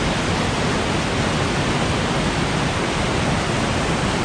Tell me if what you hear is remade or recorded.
recorded